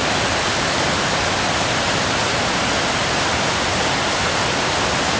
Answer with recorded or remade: recorded